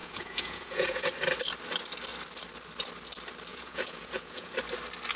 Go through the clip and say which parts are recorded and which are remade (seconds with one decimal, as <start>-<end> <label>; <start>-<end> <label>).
0.0-1.1 remade; 1.1-3.5 recorded; 3.5-4.5 remade; 4.5-5.2 recorded